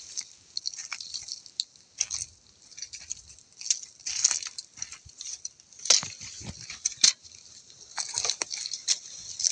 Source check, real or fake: real